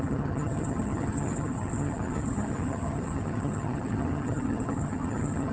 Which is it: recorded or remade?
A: remade